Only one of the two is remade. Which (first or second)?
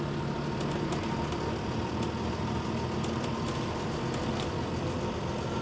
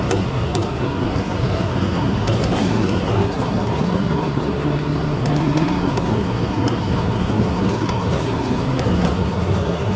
second